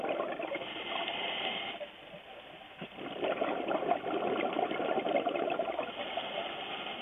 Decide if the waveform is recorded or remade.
recorded